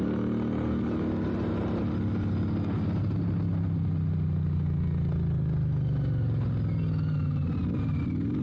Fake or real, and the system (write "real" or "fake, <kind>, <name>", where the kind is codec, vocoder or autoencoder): real